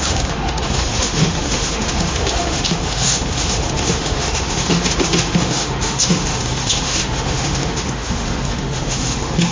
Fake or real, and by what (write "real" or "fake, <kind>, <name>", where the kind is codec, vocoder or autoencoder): fake, autoencoder, DAC-VAE